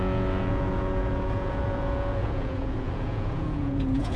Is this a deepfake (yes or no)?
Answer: yes